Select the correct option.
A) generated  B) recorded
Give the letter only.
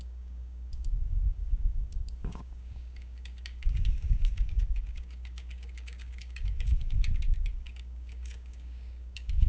A